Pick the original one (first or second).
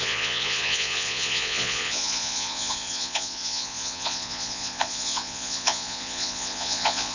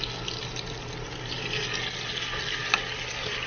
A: second